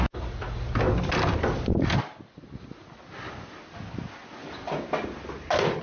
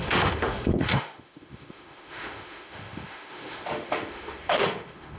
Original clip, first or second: first